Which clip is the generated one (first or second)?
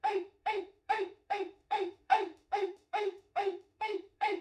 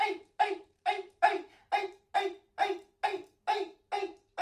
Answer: first